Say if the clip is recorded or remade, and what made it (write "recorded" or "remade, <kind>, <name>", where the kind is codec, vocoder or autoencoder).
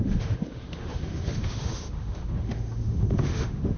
remade, autoencoder, DAC-VAE